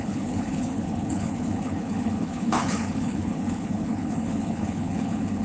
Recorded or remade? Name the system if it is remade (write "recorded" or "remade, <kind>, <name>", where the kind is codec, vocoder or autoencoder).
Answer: remade, codec, HILCodec